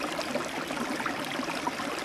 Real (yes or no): yes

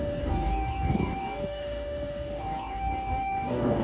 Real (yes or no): no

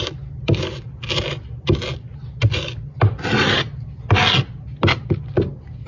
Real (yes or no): yes